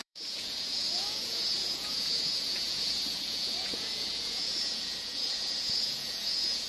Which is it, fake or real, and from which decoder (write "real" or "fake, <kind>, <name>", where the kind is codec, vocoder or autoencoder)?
fake, vocoder, Vocos